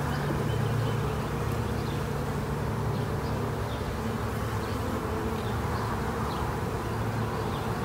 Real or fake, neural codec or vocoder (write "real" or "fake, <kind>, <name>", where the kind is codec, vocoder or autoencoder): real